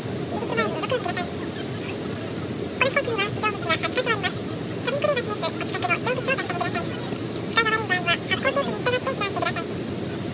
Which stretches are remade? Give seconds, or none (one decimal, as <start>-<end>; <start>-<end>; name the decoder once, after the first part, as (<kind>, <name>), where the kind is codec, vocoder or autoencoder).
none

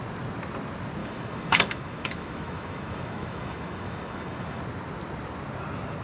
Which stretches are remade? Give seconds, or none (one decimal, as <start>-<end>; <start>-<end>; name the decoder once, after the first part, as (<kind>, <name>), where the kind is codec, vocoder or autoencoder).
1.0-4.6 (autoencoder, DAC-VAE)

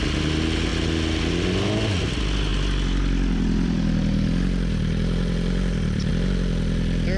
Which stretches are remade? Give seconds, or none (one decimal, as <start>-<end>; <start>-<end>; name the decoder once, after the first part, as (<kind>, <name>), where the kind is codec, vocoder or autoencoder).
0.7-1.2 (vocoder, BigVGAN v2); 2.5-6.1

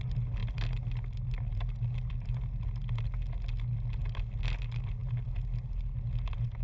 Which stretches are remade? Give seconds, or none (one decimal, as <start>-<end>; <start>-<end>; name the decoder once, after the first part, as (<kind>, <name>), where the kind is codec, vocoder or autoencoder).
none